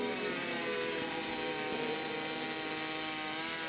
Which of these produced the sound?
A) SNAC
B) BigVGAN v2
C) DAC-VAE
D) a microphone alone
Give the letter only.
D